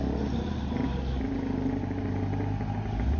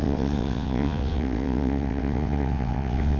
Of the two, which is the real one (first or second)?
first